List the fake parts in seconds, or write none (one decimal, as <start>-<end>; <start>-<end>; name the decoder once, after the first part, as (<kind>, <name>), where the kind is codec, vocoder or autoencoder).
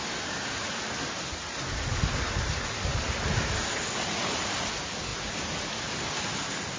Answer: none